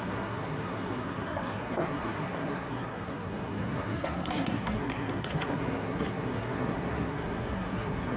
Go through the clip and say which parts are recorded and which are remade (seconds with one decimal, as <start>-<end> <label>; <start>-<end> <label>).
0.0-8.2 remade